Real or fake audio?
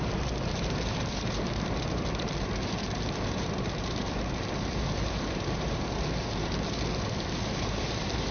fake